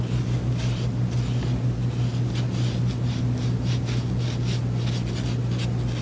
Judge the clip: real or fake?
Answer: real